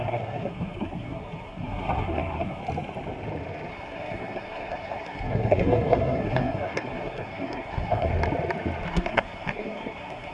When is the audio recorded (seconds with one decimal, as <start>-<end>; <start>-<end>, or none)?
2.6-3.7; 8.1-8.9